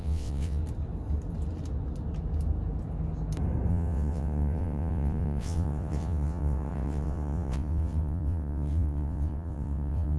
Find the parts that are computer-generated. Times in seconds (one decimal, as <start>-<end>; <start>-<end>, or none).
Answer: 0.0-0.6; 3.7-10.2